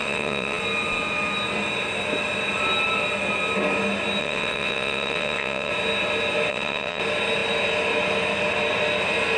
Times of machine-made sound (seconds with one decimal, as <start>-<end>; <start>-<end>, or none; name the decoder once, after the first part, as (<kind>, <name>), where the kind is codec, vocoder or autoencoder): 0.0-0.6 (vocoder, WaveNeXt); 4.2-5.7; 6.5-7.0